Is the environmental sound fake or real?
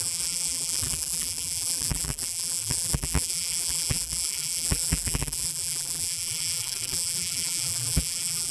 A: fake